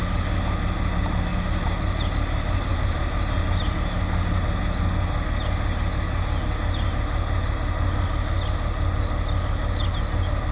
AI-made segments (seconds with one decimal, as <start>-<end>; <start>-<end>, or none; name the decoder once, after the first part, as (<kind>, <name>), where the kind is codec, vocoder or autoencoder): 1.3-3.7 (vocoder, BigVGAN v2)